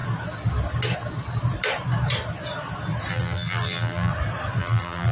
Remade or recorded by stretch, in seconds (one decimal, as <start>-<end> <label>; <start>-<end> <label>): 0.0-3.1 recorded; 3.1-4.1 remade; 4.1-4.6 recorded; 4.6-5.1 remade